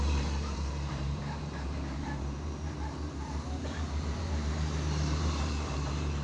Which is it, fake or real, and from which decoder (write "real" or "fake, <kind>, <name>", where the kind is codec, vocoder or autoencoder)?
fake, vocoder, BigVGAN v2